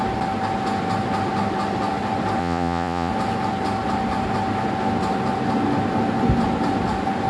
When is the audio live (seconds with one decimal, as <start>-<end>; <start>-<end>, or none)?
0.0-2.4; 3.1-7.3